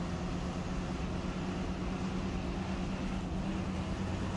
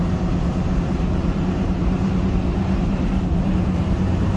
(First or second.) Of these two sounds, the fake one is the second